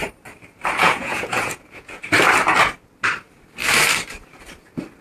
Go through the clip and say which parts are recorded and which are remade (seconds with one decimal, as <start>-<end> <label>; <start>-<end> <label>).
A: 0.0-0.8 recorded; 0.8-2.0 remade; 2.0-5.0 recorded